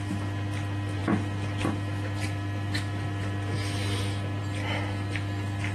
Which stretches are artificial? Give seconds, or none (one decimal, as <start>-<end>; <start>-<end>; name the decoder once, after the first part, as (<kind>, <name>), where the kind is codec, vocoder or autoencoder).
none